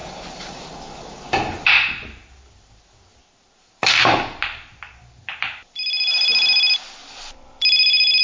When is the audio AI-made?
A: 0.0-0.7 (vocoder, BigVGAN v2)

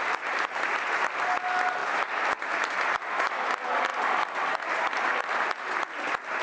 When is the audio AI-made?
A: none